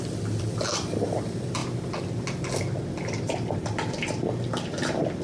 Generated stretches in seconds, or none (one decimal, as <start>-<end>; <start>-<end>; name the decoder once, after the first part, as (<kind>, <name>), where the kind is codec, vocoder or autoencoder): 0.0-1.6 (vocoder, BigVGAN v2); 2.9-5.2